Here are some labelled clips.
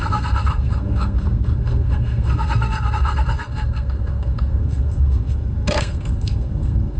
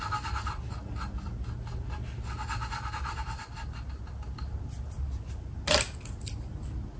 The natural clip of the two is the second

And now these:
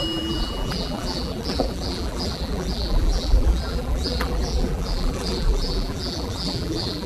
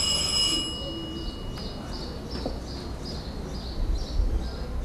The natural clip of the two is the second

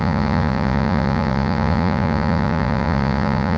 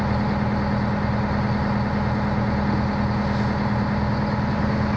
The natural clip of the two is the second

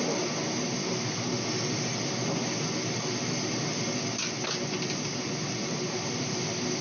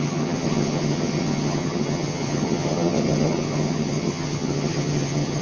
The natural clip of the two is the first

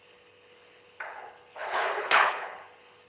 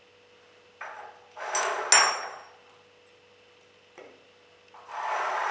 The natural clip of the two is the second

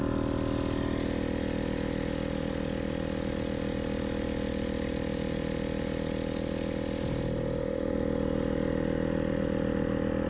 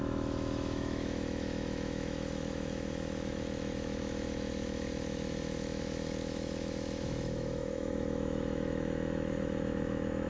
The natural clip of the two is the first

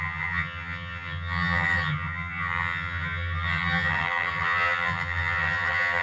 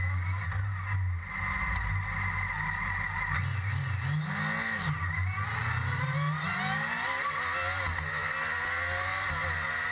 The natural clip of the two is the second